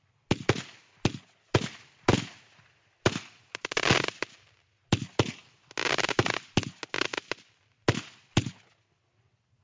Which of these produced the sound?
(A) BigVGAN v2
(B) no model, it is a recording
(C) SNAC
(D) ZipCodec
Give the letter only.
B